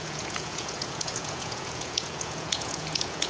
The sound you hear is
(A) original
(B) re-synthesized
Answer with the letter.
B